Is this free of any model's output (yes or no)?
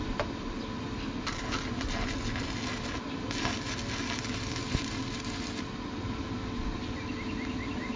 yes